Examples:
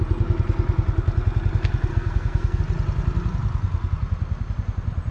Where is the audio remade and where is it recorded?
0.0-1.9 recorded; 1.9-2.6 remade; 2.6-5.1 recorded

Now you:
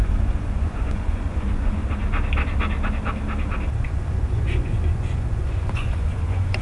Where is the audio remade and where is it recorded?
0.0-1.8 remade; 1.8-3.8 recorded; 3.8-6.6 remade

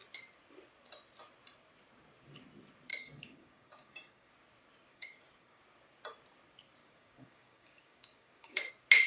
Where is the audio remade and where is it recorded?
0.0-2.9 recorded; 2.9-4.3 remade; 4.3-4.9 recorded; 4.9-5.6 remade; 5.6-6.8 recorded; 6.8-8.7 remade; 8.7-9.1 recorded

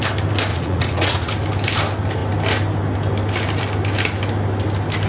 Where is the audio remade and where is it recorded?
0.0-0.5 recorded; 0.5-1.3 remade; 1.3-5.1 recorded

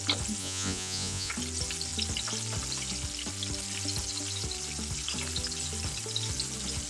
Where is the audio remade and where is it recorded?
0.0-0.4 recorded; 0.4-1.3 remade; 1.3-6.9 recorded

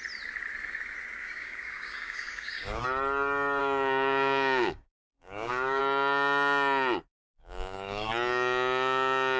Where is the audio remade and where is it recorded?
0.0-1.2 recorded; 1.2-2.8 remade; 2.8-3.6 recorded; 3.6-5.8 remade; 5.8-7.1 recorded; 7.1-8.1 remade; 8.1-9.4 recorded